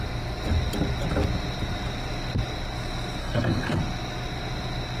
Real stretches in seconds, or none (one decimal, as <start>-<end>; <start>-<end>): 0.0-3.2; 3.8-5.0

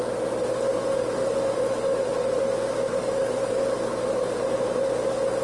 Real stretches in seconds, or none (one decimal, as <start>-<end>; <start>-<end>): 0.0-5.4

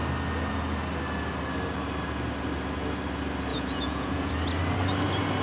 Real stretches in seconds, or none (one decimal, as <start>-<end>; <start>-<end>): 0.0-3.5; 4.3-5.4

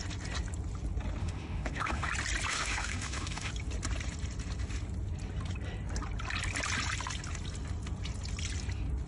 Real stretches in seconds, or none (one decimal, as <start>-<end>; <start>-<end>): 0.0-1.2; 2.1-2.5; 3.5-9.1

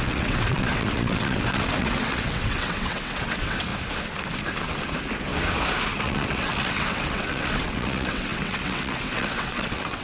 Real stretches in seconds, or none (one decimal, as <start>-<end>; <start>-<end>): 3.7-6.0

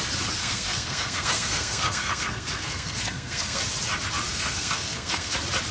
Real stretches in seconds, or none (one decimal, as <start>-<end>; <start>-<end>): 0.0-0.4; 3.6-4.3; 5.3-5.7